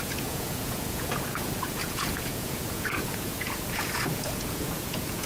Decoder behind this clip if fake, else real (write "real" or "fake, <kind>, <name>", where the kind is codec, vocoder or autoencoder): fake, vocoder, Vocos